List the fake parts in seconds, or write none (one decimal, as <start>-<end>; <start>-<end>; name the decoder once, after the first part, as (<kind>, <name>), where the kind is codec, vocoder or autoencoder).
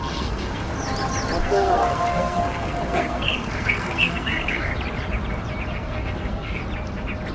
0.0-0.7 (codec, SNAC); 1.4-4.7; 5.7-6.6